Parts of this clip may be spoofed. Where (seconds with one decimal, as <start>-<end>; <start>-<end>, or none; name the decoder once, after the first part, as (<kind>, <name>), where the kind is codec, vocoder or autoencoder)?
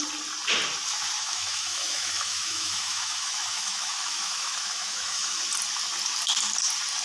1.2-5.4 (autoencoder, DAC-VAE)